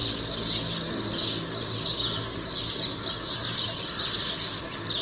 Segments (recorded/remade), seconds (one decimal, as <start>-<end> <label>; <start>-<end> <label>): 0.0-5.0 recorded